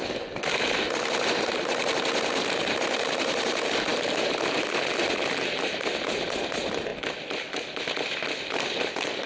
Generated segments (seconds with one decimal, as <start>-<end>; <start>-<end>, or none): none